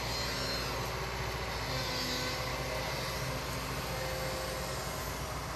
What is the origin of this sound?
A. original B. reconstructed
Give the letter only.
A